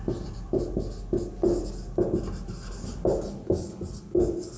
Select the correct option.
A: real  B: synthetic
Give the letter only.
A